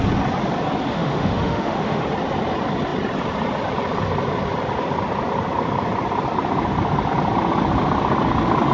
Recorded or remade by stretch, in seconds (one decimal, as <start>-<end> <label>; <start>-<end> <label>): 0.0-0.9 recorded; 0.9-2.0 remade; 2.0-8.7 recorded